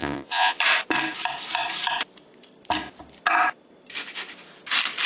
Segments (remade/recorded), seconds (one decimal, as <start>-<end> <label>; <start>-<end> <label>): 0.0-0.6 remade; 0.6-5.1 recorded